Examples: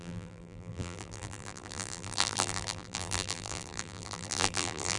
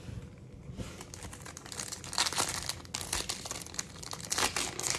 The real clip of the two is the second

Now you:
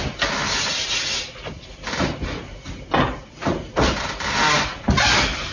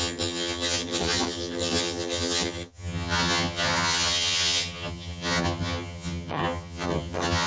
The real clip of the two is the first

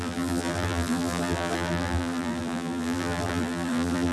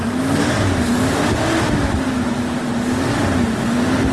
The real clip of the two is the second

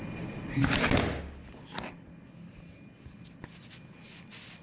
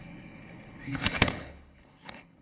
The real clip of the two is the first